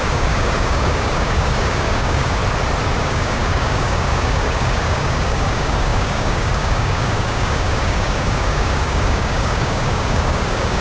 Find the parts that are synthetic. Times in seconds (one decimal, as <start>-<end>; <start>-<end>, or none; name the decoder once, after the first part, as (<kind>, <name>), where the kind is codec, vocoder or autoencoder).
0.0-2.4 (codec, DAC); 3.0-10.8